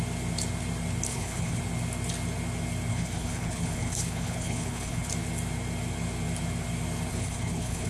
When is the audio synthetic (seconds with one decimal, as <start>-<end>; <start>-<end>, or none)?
1.1-1.6; 2.9-5.1; 7.1-7.9